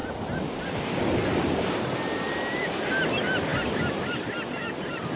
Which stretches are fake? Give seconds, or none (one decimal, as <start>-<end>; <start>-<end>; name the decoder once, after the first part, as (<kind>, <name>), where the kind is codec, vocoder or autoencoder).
none

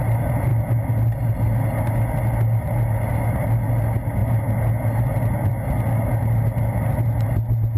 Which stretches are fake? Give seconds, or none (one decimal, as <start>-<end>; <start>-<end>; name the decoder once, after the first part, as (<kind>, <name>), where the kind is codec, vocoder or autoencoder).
none

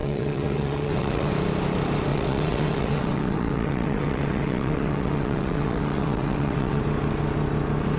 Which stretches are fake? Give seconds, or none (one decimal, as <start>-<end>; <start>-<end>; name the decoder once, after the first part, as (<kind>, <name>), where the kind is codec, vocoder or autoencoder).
0.0-1.3 (vocoder, WaveNeXt); 2.1-6.8

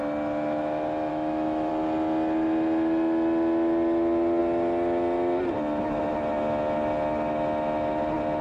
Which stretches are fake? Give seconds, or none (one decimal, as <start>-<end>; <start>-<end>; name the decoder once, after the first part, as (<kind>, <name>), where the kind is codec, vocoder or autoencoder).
1.1-1.7 (autoencoder, DAC-VAE)

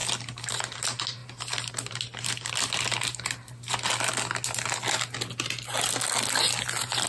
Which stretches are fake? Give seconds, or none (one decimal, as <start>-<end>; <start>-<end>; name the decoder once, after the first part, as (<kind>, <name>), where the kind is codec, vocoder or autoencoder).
none

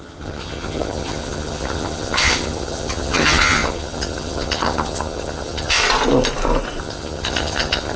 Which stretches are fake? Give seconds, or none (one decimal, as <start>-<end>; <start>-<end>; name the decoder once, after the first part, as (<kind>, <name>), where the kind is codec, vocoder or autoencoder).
0.0-5.8 (vocoder, HiFi-GAN); 6.8-8.0

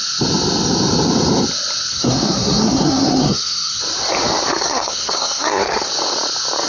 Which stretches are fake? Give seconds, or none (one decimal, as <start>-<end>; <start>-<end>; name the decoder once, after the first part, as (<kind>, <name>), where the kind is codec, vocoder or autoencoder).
1.9-3.8 (codec, SNAC); 4.5-5.9